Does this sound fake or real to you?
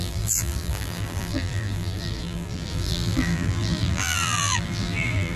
fake